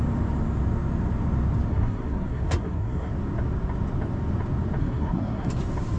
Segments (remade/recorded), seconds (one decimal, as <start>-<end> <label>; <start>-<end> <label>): 0.0-1.7 recorded; 1.7-3.1 remade; 3.1-4.8 recorded; 4.8-5.5 remade; 5.5-6.0 recorded